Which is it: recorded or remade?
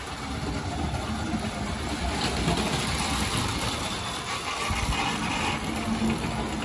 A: recorded